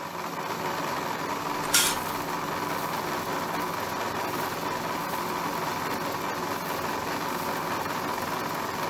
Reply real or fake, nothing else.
real